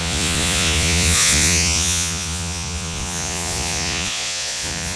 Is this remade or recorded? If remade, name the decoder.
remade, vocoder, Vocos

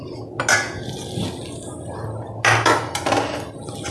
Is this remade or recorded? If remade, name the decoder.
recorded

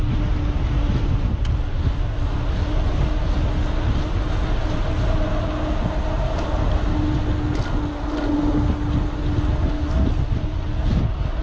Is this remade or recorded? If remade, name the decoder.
recorded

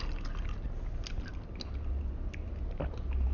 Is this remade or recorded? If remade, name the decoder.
recorded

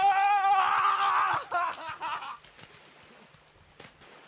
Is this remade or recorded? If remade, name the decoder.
recorded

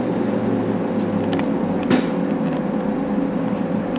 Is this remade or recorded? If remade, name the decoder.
recorded